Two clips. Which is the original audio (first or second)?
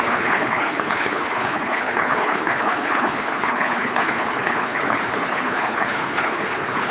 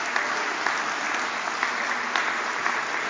second